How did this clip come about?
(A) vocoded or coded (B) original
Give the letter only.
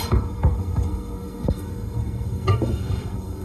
A